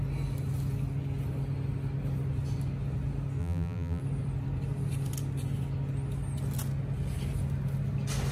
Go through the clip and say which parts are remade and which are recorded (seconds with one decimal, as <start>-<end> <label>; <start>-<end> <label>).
0.0-3.4 recorded; 3.4-4.0 remade; 4.0-8.3 recorded